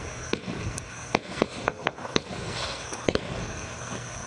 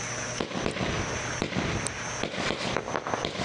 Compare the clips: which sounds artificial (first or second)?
first